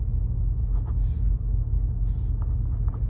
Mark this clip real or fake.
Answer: real